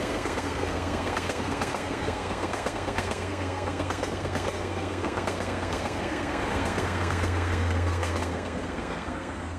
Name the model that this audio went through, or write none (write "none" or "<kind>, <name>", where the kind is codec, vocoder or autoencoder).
codec, SNAC